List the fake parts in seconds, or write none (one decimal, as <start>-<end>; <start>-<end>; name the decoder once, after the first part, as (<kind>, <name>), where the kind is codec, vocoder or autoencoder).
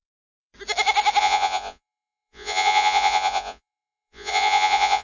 1.2-5.0 (vocoder, Vocos)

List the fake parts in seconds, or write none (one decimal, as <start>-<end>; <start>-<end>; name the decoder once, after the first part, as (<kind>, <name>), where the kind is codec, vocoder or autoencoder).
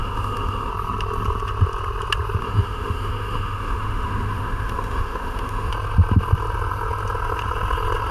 0.0-0.7 (autoencoder, DAC-VAE); 2.4-5.7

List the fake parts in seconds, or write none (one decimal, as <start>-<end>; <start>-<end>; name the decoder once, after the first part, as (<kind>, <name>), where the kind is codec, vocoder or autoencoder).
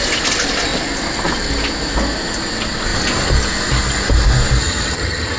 4.6-5.4 (vocoder, HiFi-GAN)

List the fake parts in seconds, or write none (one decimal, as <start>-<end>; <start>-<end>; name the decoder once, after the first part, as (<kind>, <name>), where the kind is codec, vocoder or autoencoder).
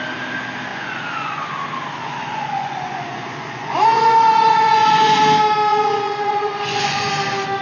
0.7-1.5 (vocoder, Vocos); 2.0-5.2; 5.7-7.1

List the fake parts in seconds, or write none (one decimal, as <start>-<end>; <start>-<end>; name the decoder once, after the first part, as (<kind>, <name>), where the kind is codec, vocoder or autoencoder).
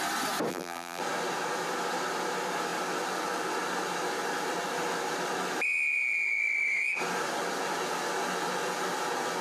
0.5-1.0 (vocoder, BigVGAN v2)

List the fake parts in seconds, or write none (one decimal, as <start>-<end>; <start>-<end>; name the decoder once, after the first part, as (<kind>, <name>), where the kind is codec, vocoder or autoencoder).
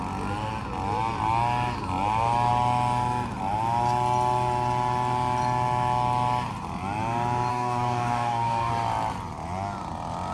7.5-8.7 (codec, DAC)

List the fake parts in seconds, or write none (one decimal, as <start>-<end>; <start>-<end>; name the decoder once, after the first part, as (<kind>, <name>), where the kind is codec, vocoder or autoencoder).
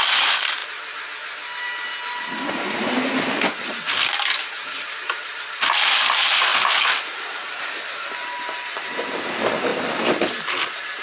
none